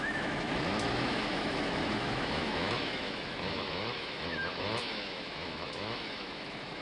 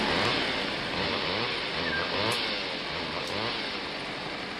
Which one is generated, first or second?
first